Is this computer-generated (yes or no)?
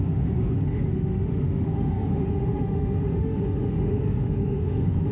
yes